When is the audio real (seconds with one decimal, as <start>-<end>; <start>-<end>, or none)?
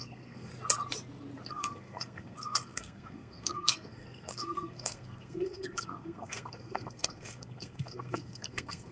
0.5-1.5